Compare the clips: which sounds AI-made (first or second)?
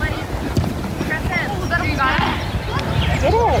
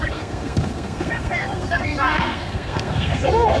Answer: second